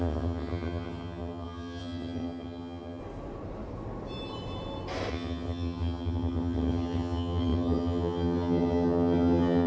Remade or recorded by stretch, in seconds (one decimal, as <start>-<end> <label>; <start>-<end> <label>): 0.0-3.0 remade; 3.0-5.1 recorded; 5.1-9.7 remade